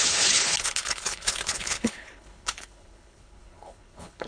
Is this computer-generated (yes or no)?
yes